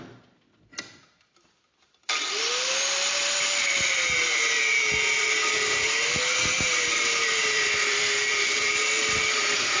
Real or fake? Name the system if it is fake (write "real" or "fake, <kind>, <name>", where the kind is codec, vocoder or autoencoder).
fake, vocoder, BigVGAN v2